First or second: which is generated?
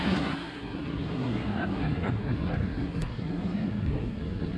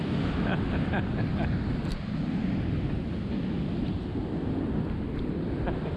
first